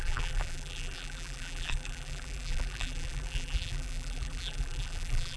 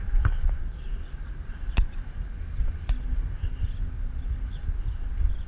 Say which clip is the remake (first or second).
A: first